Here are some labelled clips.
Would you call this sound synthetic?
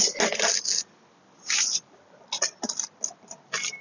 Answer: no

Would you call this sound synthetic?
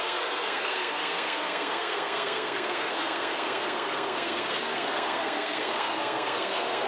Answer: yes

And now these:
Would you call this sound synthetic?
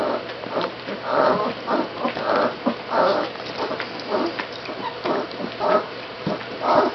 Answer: no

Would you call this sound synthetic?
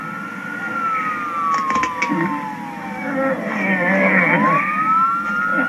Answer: no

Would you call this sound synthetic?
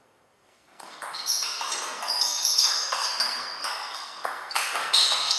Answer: yes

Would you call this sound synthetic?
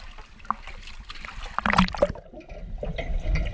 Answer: no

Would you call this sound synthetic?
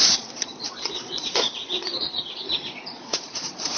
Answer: yes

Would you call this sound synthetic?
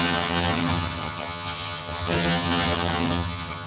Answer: yes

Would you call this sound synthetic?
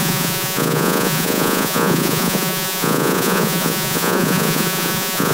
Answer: yes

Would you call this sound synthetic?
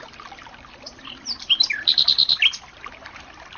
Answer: yes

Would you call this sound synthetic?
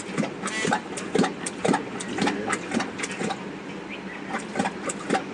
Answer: no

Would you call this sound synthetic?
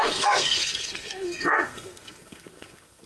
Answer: yes